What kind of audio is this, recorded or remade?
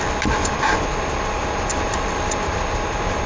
recorded